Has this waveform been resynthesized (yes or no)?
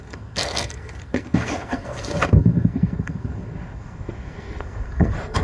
yes